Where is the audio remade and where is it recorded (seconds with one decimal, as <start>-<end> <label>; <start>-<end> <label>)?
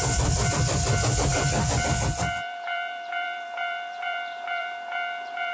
0.0-5.5 remade